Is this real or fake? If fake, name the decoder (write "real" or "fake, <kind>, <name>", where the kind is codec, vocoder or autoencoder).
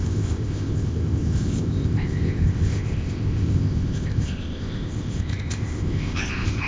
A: fake, codec, ZipCodec